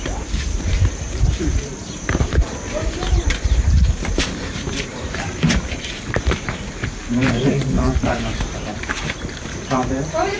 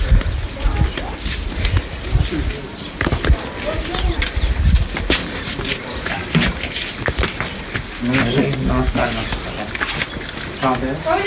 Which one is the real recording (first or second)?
second